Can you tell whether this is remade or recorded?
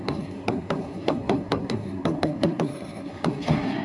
remade